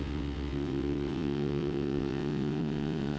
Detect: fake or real fake